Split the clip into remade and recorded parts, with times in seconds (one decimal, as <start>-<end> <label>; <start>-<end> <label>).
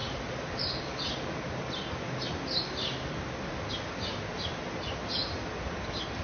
0.0-6.2 recorded